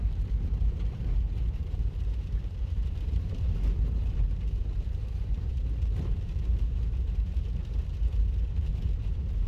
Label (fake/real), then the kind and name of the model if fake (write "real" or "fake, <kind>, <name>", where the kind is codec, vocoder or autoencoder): fake, vocoder, BigVGAN v2